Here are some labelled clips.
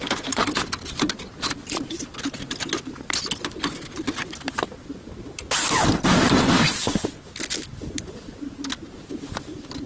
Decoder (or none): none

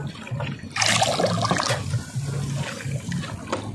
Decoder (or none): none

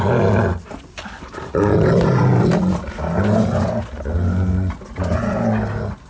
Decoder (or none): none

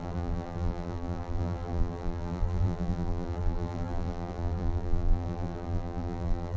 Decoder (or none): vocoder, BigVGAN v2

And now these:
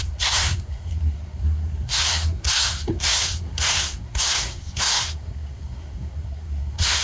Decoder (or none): codec, SNAC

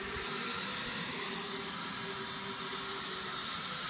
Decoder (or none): none